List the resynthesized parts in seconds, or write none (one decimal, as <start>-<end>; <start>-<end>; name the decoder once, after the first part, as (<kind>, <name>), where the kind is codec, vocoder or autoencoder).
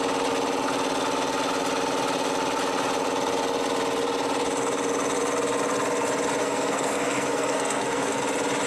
6.4-8.2 (codec, SNAC)